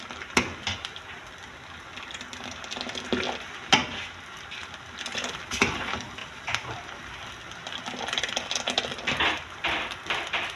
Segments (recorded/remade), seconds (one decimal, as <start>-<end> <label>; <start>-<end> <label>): 0.0-4.6 recorded; 4.6-5.2 remade; 5.2-6.2 recorded; 6.2-7.0 remade; 7.0-10.6 recorded